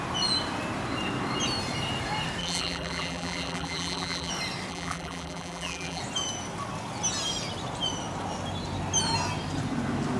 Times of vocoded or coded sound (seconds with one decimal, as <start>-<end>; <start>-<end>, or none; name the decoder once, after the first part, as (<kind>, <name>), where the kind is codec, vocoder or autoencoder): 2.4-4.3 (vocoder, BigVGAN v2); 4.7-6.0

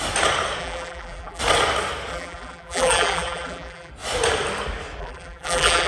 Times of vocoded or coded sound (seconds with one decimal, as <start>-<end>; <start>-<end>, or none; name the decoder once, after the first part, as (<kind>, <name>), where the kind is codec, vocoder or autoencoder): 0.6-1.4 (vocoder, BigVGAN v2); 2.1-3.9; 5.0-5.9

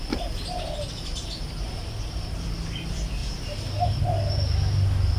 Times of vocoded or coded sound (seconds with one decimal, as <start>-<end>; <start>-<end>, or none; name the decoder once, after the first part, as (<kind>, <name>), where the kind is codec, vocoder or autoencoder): 3.2-4.0 (vocoder, BigVGAN v2)

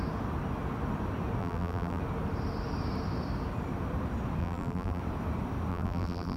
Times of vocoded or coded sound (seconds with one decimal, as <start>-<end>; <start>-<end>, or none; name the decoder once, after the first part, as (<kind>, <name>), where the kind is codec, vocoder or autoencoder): 1.4-2.0 (vocoder, BigVGAN v2); 4.4-5.0; 5.7-6.4

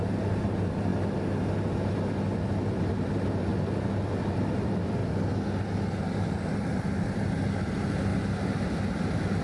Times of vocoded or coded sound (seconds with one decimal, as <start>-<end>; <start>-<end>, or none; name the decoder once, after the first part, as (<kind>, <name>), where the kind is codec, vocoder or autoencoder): 0.0-0.9 (vocoder, BigVGAN v2); 2.9-3.5; 4.1-5.0; 5.9-8.1; 8.9-9.4

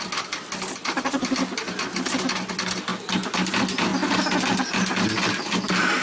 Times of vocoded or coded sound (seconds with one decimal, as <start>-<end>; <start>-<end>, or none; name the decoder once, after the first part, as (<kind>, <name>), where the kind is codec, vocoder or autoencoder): none

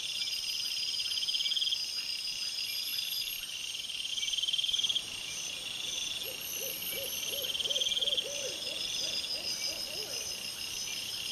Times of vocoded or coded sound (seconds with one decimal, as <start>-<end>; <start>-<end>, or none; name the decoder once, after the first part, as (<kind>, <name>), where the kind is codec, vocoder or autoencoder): 2.9-3.6 (vocoder, BigVGAN v2); 4.1-5.4

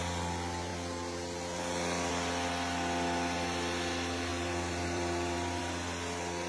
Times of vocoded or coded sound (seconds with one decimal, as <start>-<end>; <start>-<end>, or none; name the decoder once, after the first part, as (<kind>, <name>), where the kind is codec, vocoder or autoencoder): 4.3-5.6 (vocoder, BigVGAN v2)